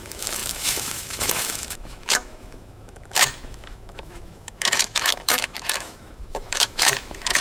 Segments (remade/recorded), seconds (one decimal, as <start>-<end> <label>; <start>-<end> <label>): 0.0-7.4 remade